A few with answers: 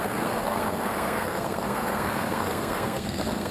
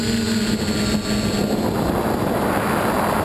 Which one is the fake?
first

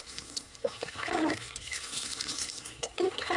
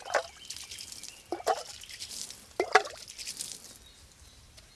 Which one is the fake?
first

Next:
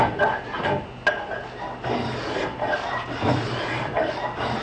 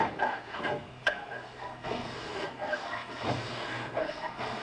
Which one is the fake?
second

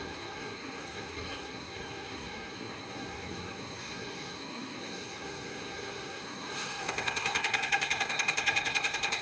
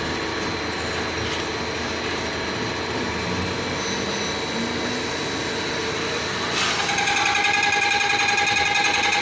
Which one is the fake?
first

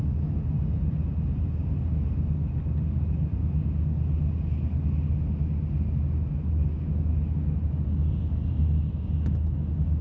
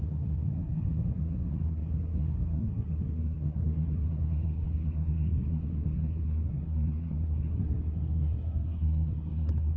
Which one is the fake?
second